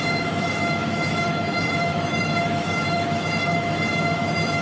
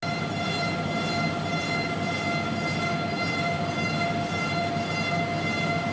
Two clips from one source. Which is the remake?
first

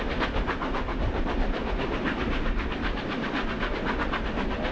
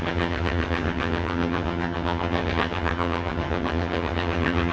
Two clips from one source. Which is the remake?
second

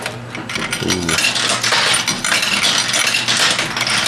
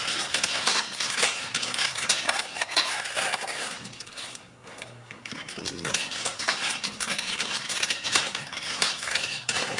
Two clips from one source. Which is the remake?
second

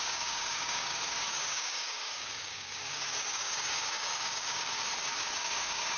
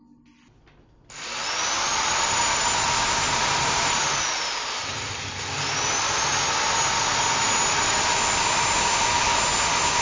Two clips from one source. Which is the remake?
first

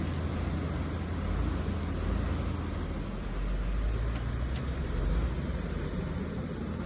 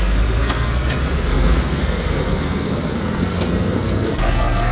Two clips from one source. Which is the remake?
second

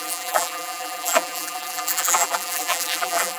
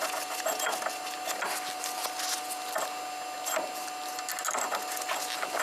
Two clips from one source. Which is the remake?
first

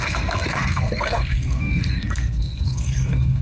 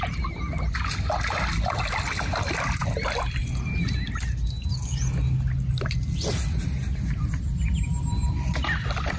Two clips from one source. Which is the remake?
first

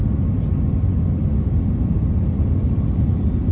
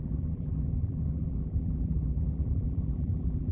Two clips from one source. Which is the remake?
second